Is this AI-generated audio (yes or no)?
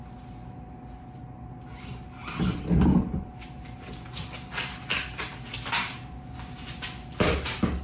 no